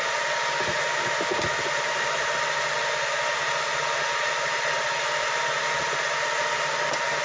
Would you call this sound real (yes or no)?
yes